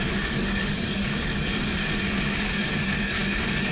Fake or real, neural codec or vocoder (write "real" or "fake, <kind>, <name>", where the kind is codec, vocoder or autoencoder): fake, codec, DAC